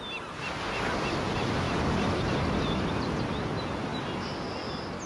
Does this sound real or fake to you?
real